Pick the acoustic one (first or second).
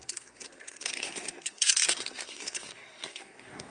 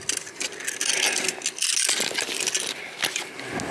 second